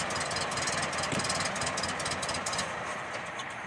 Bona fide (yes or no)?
yes